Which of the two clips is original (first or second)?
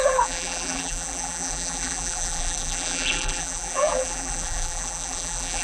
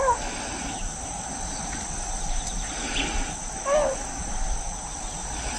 second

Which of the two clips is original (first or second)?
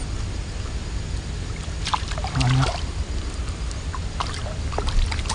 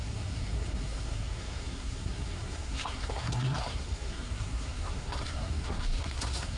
first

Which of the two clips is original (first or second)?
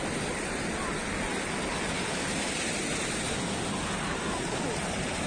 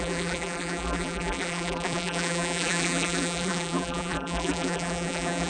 first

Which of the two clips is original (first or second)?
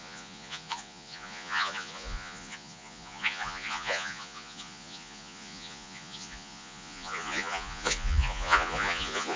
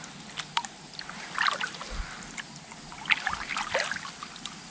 second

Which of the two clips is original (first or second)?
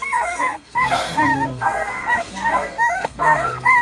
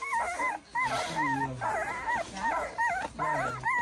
second